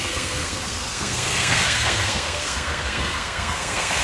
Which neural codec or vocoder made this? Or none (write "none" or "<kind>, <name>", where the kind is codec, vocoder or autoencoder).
codec, SNAC